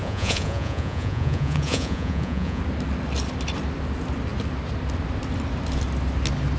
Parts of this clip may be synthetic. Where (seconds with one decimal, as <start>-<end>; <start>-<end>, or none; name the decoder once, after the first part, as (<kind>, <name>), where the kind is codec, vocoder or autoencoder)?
0.0-2.6 (vocoder, Vocos)